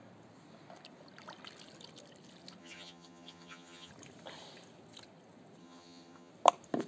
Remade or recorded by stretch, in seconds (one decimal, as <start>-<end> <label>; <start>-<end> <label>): 0.0-2.6 recorded; 2.6-3.9 remade; 3.9-5.6 recorded; 5.6-6.3 remade; 6.3-6.9 recorded